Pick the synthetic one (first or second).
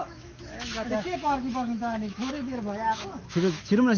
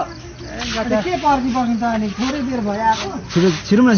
first